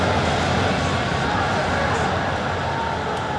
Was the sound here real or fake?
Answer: real